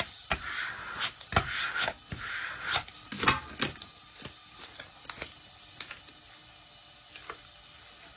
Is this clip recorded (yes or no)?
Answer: yes